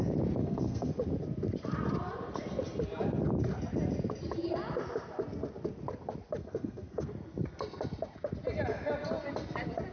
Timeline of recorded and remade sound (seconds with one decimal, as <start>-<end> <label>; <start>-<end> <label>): 0.0-0.4 recorded; 0.4-0.9 remade; 0.9-6.4 recorded; 6.4-7.1 remade; 7.1-9.9 recorded